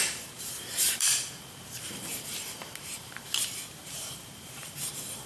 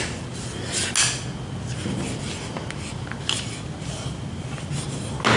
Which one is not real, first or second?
first